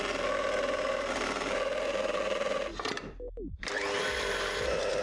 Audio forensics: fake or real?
fake